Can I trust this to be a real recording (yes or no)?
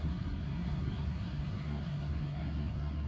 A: no